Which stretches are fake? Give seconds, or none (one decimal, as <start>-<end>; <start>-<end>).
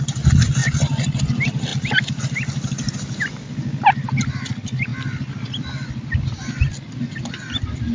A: 0.6-1.2; 4.9-7.2